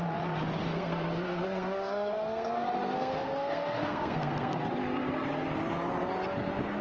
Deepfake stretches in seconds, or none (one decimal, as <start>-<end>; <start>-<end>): 0.6-4.7